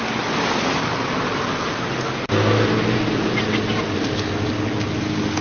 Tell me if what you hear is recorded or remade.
recorded